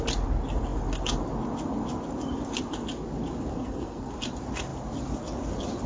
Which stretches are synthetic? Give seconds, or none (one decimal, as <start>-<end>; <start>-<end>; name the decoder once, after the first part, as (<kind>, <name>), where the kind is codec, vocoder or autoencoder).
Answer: 3.5-4.1 (codec, SNAC)